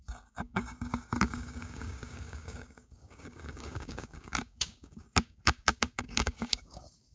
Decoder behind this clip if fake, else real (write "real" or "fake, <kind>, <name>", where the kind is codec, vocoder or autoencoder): fake, codec, DAC